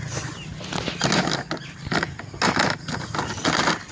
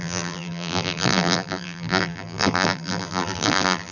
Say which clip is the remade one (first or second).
second